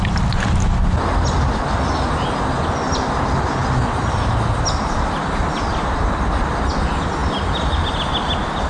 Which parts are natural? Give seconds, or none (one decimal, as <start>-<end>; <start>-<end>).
0.0-8.7